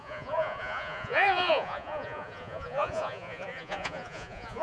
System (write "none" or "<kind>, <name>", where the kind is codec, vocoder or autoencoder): vocoder, Vocos